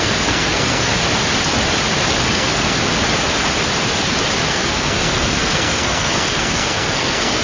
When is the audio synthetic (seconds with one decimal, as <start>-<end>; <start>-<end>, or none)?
0.0-0.9; 2.3-2.8; 4.5-7.4